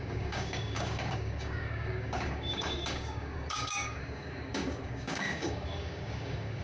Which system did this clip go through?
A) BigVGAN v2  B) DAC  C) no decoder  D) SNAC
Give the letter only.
B